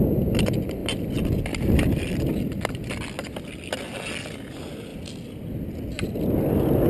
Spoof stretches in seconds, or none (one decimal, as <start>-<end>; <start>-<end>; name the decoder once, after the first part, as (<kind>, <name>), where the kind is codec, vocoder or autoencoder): none